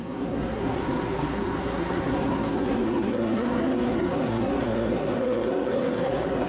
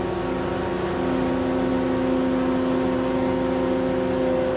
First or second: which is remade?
first